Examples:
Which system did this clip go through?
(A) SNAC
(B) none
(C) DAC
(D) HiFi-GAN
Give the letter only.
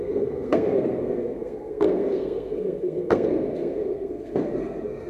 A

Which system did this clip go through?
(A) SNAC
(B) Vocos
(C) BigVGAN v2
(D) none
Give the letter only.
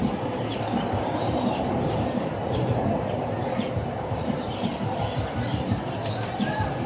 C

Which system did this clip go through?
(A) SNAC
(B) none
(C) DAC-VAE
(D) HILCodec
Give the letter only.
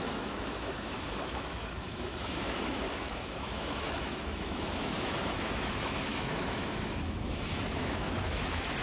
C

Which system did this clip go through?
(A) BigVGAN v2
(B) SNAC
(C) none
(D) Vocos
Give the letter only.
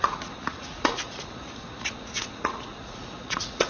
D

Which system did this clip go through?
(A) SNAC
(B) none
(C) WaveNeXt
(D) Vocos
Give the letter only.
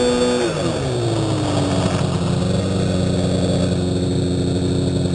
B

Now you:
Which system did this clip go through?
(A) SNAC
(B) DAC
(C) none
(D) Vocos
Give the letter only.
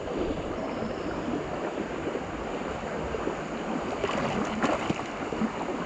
C